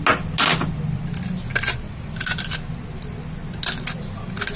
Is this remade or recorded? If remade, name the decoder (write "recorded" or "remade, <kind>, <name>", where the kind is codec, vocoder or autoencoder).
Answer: recorded